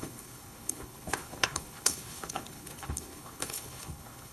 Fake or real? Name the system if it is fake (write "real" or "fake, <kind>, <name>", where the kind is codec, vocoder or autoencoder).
fake, codec, HILCodec